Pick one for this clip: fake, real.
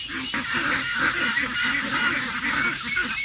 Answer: real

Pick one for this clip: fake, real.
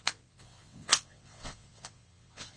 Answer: fake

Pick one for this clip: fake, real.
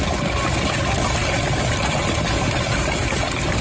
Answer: real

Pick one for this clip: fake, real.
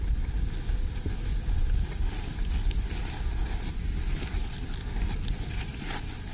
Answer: real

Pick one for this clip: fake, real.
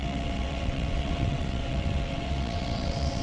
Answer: fake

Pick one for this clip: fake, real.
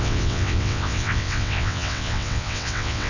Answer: fake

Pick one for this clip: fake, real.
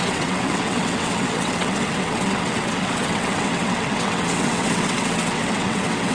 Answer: fake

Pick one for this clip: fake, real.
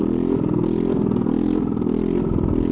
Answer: real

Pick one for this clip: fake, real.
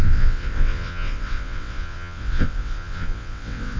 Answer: fake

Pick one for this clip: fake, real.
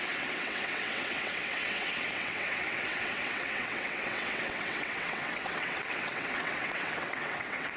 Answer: fake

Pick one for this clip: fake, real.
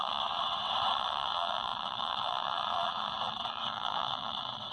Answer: fake